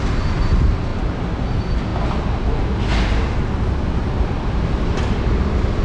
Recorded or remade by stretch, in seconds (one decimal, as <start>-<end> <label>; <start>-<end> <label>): 0.0-5.8 recorded